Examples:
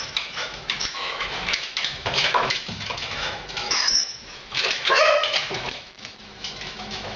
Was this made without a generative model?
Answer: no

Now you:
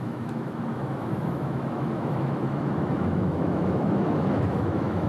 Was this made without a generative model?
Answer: no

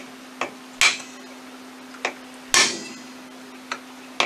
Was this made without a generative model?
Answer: yes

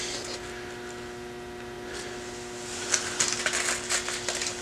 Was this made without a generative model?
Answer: yes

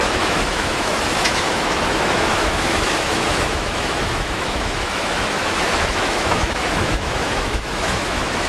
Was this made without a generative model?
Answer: no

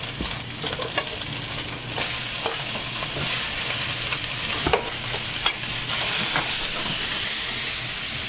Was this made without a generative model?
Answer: yes